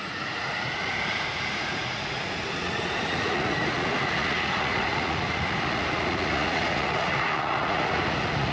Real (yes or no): no